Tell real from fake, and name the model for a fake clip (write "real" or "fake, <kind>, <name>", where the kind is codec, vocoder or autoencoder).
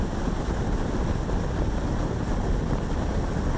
real